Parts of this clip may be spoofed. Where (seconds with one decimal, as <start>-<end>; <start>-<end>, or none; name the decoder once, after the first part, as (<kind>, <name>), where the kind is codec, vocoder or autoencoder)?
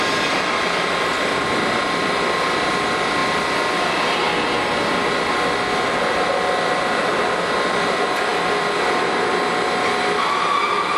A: none